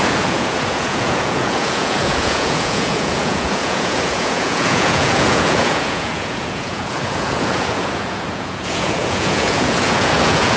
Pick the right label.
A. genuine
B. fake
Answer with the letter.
B